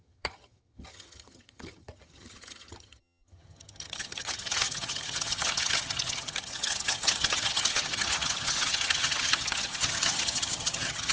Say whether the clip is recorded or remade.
remade